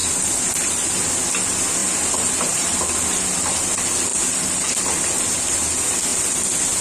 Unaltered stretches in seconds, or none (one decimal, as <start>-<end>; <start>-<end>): 0.0-1.8; 2.8-6.8